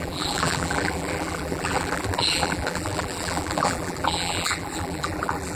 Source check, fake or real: fake